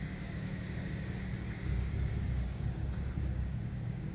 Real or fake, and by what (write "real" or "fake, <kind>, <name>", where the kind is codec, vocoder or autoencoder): fake, codec, DAC